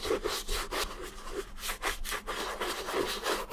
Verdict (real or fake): real